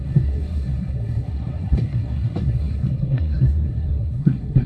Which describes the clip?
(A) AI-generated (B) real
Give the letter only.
A